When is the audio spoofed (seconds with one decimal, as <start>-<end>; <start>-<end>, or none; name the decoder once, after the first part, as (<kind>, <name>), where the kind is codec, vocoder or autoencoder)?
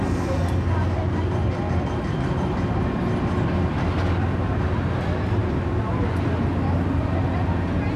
none